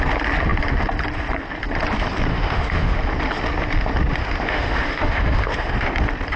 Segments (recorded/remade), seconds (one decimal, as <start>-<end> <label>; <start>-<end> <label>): 0.0-2.3 recorded; 2.3-3.0 remade; 3.0-4.2 recorded; 4.2-6.0 remade; 6.0-6.4 recorded